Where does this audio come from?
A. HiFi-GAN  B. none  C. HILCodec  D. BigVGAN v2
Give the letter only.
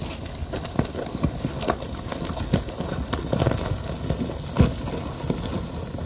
B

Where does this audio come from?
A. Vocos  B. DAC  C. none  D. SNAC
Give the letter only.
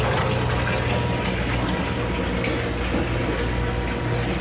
C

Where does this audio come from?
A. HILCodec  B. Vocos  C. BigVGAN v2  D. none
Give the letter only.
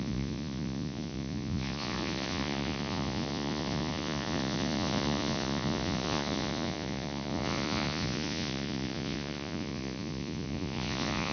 B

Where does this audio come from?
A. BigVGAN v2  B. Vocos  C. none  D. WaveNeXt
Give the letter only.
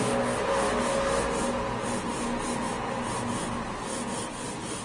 C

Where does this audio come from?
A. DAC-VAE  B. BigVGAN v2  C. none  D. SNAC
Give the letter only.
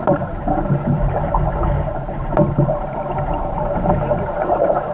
B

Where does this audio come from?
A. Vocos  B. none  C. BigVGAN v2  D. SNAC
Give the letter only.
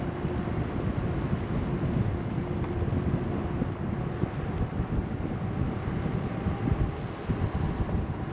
B